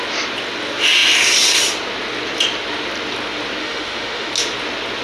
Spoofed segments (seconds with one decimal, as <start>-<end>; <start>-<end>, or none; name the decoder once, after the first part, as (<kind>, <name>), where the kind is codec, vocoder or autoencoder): 3.6-4.3 (autoencoder, DAC-VAE)